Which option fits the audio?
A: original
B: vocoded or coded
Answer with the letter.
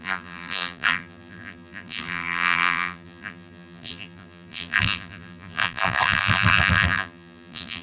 B